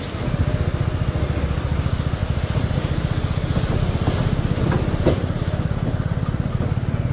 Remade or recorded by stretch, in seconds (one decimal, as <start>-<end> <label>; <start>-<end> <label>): 0.0-7.1 recorded